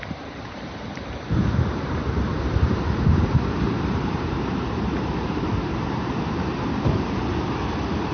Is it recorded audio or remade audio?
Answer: remade